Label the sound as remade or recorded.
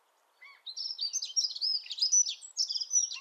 recorded